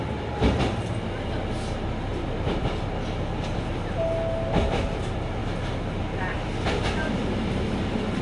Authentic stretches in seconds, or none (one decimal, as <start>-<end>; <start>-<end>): 0.0-2.1; 2.7-8.2